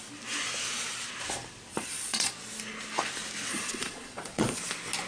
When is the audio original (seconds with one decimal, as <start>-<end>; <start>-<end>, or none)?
0.0-1.7; 2.3-3.5; 4.6-5.1